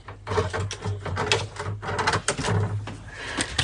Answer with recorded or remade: recorded